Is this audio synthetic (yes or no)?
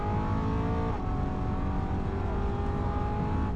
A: no